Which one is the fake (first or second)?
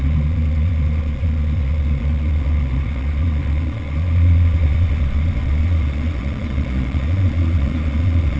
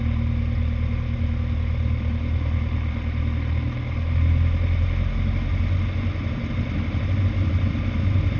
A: first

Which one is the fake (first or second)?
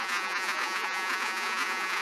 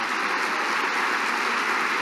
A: first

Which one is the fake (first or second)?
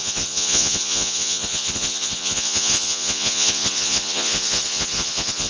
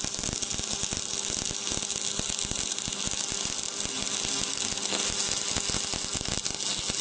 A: first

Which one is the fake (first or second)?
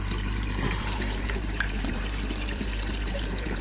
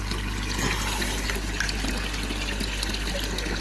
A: first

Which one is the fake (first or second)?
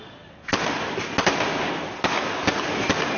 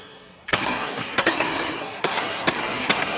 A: second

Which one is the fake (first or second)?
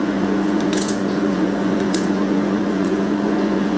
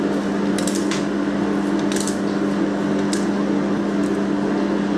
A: first